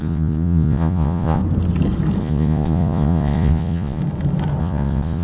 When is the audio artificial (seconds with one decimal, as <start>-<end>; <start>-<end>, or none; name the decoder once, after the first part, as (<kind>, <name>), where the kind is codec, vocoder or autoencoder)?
0.0-1.4 (vocoder, Vocos); 2.2-4.0; 4.6-5.2